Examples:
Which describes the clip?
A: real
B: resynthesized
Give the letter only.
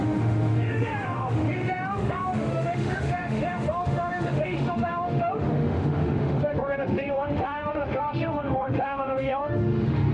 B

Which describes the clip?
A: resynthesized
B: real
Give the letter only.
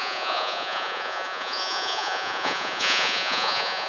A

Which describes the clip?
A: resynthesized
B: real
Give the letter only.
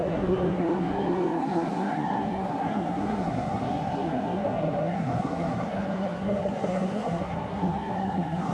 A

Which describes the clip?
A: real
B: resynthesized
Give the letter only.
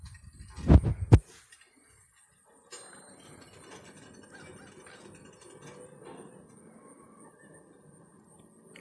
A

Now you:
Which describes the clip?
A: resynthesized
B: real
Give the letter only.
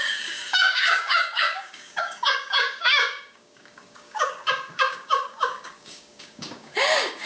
A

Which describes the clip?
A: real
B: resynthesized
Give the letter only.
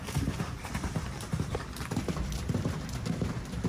B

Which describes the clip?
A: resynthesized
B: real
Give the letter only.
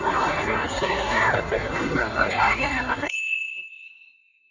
A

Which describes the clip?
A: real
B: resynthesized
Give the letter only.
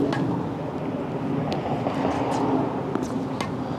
A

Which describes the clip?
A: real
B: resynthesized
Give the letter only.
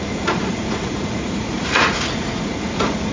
B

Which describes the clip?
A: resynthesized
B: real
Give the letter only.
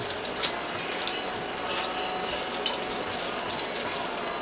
B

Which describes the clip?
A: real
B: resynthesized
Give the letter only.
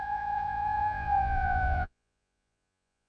B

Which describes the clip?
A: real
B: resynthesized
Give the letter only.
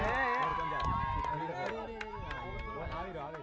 A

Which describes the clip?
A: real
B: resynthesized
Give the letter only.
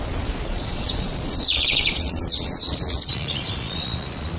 B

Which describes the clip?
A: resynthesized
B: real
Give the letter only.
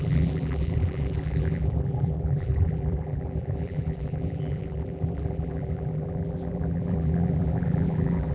A